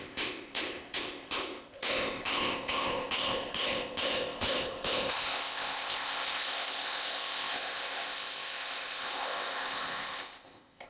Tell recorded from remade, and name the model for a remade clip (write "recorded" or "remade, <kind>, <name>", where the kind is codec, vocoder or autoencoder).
remade, codec, ZipCodec